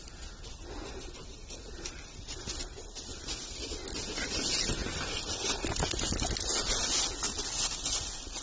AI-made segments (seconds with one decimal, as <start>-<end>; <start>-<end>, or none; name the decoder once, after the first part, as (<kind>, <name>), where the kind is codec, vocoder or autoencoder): none